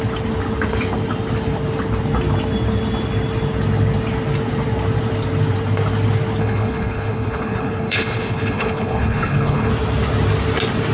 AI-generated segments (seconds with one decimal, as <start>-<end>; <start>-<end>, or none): 6.4-9.7